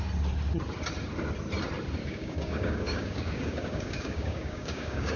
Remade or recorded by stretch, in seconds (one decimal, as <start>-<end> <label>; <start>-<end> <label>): 0.0-2.0 recorded; 2.0-5.2 remade